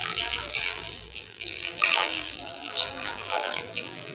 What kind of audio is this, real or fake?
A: fake